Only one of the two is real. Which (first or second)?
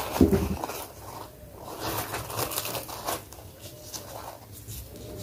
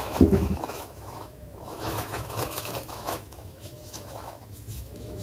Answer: first